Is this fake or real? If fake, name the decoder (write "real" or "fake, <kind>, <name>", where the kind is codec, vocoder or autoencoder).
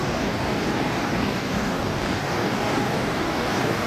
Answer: fake, codec, DAC